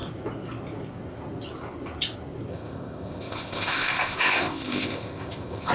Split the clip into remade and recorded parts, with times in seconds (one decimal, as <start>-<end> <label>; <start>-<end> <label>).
0.0-2.5 recorded; 2.5-5.7 remade